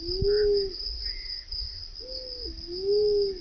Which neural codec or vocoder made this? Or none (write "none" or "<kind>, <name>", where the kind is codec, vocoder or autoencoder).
none